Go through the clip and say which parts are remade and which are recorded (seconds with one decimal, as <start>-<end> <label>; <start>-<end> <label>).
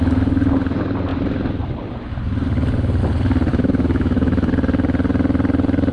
0.0-3.5 recorded; 3.5-4.5 remade; 4.5-5.9 recorded